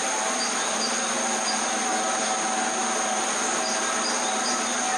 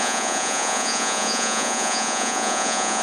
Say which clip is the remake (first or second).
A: second